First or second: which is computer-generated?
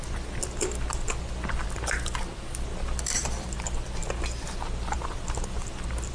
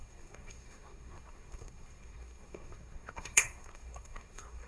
second